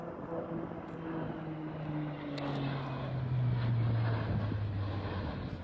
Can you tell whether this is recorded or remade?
recorded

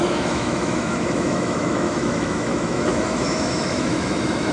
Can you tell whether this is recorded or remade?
remade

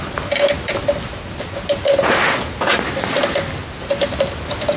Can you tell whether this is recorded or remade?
recorded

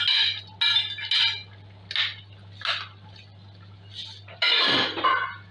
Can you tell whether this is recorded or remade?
recorded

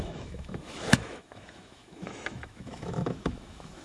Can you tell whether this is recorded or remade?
remade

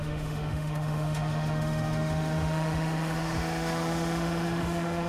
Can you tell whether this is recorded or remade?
remade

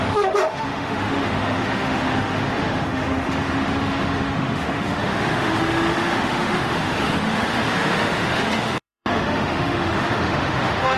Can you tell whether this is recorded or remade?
remade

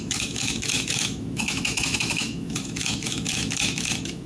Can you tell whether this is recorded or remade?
remade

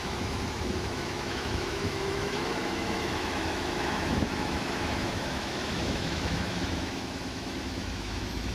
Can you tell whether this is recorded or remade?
remade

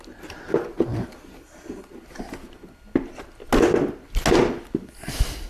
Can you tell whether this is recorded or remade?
recorded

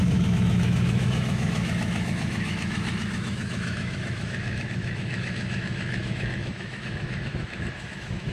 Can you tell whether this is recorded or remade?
remade